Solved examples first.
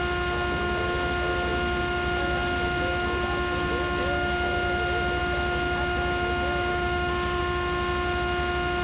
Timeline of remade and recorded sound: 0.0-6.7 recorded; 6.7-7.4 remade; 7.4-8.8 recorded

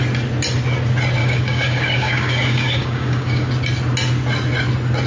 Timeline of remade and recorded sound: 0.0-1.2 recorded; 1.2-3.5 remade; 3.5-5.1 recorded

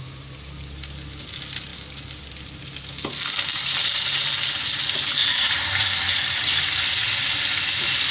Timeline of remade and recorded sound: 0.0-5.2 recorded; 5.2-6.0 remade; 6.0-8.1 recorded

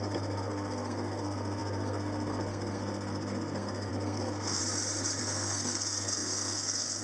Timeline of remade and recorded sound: 0.0-4.6 remade; 4.6-5.2 recorded; 5.2-7.0 remade

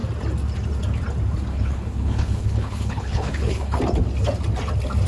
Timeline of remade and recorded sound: 0.0-1.5 recorded; 1.5-3.8 remade; 3.8-5.1 recorded